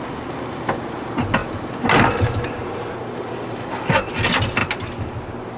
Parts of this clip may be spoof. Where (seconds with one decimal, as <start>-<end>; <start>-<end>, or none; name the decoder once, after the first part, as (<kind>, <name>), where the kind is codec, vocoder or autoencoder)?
none